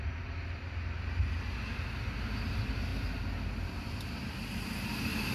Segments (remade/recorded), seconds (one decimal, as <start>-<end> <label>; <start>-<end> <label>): 0.0-5.3 recorded